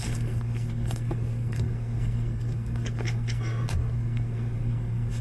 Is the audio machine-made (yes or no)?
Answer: yes